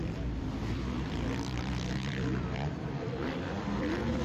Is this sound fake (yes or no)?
yes